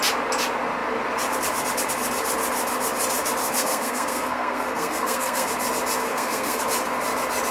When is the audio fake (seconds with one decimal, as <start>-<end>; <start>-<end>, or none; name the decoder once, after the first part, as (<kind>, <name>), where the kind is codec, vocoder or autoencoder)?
3.4-5.5 (codec, SNAC); 6.1-6.6